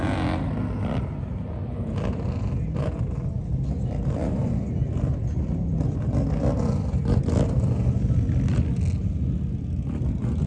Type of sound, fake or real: real